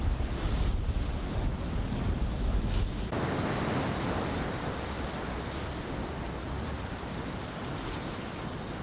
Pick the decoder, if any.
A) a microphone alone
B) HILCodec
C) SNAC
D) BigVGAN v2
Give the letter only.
A